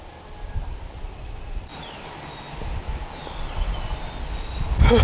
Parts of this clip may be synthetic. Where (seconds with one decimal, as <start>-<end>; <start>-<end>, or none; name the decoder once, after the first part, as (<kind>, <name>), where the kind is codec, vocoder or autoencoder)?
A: none